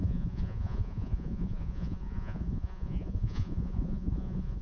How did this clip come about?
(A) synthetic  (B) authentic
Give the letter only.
A